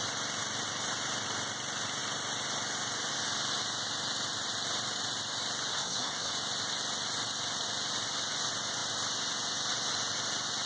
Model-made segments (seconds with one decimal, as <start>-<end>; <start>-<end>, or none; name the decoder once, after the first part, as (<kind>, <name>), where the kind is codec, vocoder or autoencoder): 5.7-6.3 (codec, SNAC)